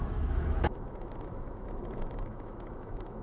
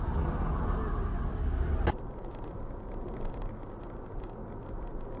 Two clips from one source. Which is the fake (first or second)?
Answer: first